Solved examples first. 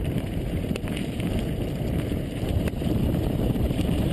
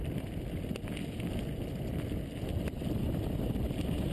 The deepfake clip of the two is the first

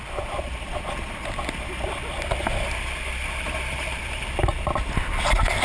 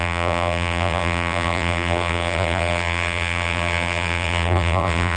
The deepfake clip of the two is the second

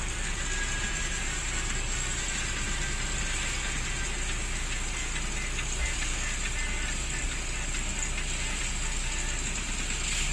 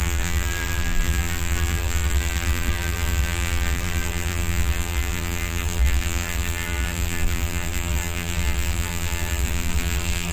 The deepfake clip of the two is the second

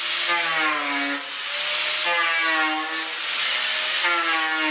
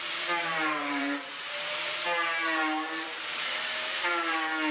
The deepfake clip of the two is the second